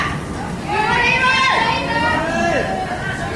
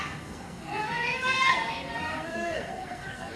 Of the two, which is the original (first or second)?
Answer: first